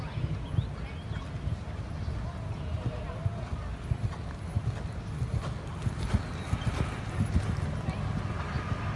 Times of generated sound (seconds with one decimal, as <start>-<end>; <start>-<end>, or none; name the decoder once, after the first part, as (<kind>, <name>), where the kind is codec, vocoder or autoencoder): none